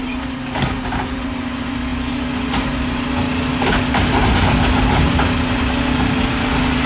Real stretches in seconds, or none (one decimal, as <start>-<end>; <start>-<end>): 0.0-6.9